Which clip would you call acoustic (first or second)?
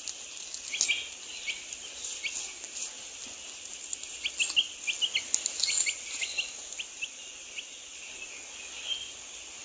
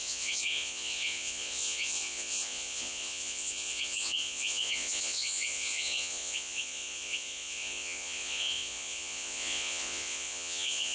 first